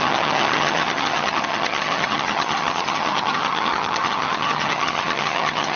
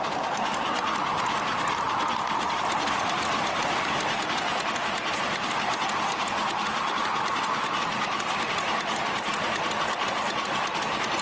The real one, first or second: second